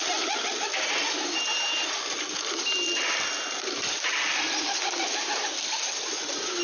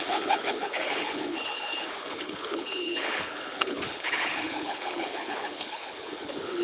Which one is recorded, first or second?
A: first